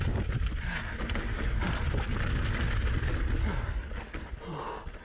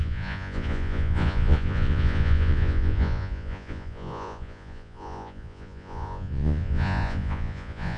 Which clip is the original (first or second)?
first